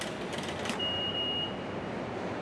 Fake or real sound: real